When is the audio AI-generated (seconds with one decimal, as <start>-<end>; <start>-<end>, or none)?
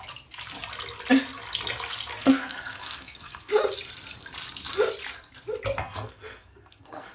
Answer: 2.1-3.5; 5.8-7.1